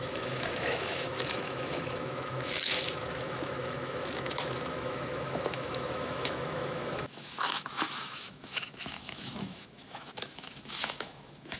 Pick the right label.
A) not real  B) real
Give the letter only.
A